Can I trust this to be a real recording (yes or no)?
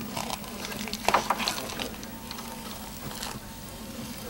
yes